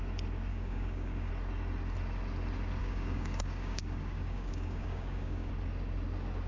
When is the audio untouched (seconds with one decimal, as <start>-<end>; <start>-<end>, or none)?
0.0-0.5; 1.3-2.8; 5.5-6.5